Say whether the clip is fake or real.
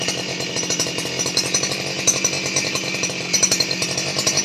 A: fake